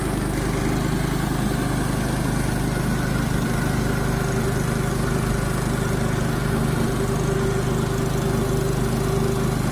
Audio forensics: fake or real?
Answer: real